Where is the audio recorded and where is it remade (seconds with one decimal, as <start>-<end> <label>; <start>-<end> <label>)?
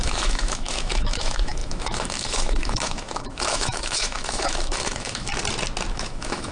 0.0-5.3 remade; 5.3-5.9 recorded; 5.9-6.5 remade